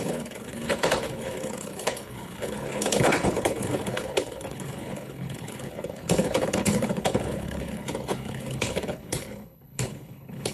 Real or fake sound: fake